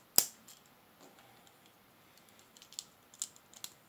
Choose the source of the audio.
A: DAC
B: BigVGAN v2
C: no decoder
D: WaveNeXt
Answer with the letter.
C